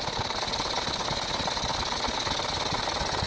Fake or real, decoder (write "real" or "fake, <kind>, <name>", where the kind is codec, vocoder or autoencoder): real